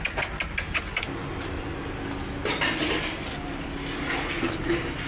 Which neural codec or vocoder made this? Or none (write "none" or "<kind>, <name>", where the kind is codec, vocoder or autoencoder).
none